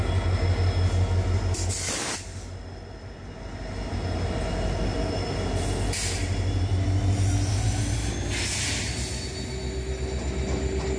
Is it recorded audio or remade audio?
recorded